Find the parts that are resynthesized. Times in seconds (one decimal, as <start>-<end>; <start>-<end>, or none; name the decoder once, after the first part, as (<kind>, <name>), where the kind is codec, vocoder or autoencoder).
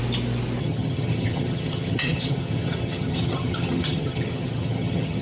0.6-5.2 (vocoder, HiFi-GAN)